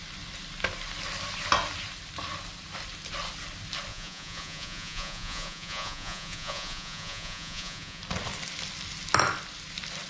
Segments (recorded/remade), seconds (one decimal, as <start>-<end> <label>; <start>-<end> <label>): 0.0-3.9 recorded; 3.9-8.0 remade; 8.0-10.1 recorded